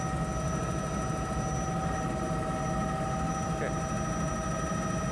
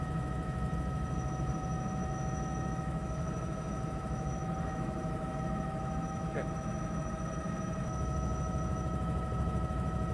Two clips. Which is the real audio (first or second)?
first